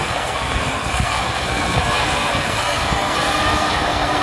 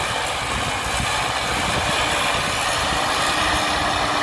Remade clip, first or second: first